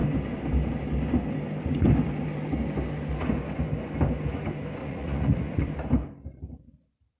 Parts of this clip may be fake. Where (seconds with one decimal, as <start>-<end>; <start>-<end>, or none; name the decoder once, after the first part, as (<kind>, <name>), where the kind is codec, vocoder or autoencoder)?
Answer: 4.8-5.6 (vocoder, Vocos)